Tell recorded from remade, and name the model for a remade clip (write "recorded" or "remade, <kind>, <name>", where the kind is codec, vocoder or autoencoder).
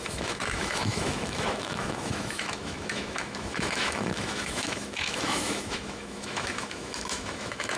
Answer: remade, autoencoder, DAC-VAE